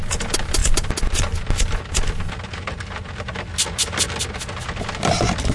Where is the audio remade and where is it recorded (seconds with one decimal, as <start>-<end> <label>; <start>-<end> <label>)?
0.0-5.5 recorded